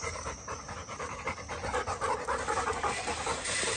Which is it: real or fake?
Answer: real